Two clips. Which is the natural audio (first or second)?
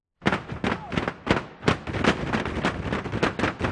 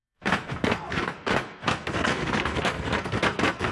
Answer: first